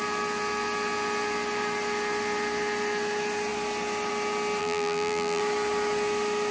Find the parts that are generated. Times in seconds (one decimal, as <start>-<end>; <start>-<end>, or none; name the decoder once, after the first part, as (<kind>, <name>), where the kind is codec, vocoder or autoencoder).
4.6-5.4 (vocoder, BigVGAN v2)